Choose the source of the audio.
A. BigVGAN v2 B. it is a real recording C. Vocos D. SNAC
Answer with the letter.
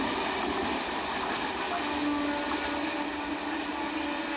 B